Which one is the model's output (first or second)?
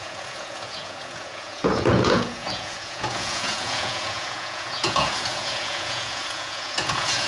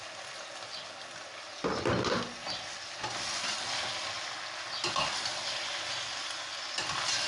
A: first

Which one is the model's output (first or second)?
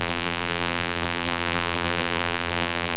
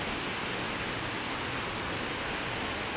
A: first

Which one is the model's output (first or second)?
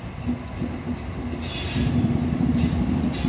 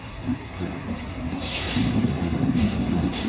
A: second